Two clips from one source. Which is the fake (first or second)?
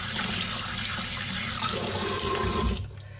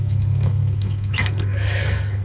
second